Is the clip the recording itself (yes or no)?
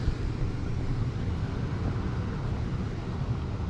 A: yes